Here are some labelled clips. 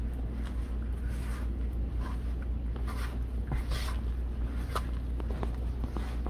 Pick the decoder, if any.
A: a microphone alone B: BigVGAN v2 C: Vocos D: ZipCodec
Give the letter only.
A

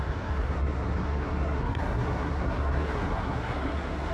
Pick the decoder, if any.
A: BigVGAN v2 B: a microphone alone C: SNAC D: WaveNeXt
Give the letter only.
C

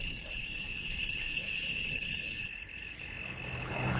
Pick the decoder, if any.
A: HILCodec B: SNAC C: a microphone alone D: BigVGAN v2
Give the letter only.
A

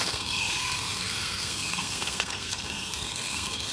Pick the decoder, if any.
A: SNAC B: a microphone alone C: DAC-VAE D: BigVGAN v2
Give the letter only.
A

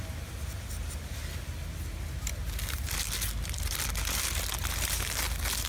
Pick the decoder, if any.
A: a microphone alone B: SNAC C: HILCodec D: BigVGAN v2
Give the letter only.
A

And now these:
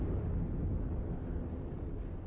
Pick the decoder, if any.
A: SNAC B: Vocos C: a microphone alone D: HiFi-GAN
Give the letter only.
C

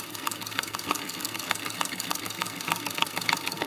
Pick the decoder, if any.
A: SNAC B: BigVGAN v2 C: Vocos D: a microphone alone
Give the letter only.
A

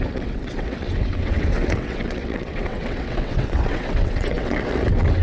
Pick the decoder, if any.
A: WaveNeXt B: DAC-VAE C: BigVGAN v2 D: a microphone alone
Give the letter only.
A